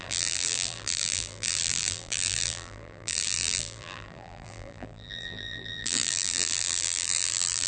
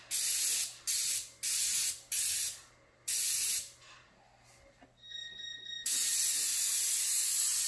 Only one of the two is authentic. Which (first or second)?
second